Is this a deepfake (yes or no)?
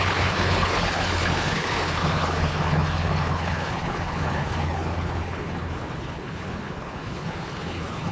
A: yes